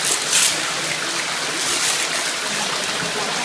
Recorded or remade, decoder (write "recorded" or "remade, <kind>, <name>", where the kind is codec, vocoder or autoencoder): remade, vocoder, BigVGAN v2